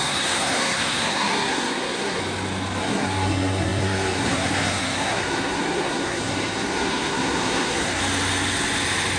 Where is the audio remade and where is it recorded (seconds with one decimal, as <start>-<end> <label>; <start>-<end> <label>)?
0.0-2.2 remade; 2.2-2.8 recorded; 2.8-8.0 remade; 8.0-9.2 recorded